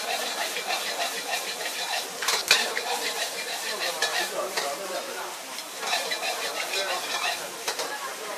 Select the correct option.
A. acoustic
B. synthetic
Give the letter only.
B